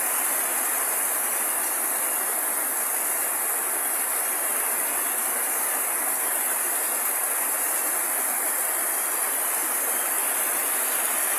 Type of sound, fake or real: real